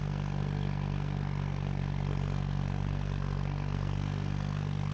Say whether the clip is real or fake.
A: fake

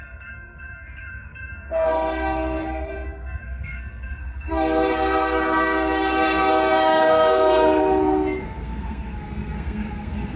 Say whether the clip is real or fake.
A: fake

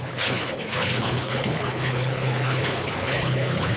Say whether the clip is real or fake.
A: fake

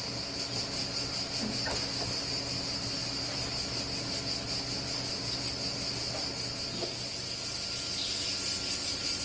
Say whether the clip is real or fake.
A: real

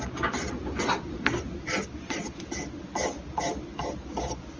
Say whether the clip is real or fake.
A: real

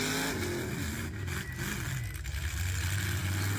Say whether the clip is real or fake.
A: real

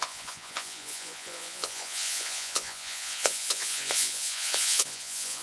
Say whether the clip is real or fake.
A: fake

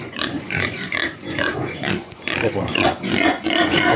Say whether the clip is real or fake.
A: fake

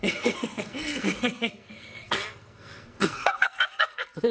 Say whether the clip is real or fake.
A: fake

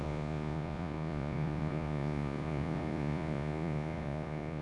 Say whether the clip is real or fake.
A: fake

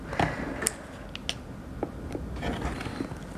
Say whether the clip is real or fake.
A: real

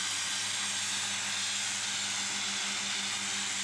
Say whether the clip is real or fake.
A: real